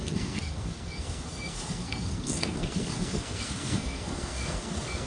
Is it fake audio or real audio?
fake